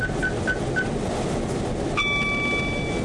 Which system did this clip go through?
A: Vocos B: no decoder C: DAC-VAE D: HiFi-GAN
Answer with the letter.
B